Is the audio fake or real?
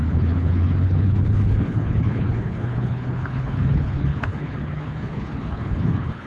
fake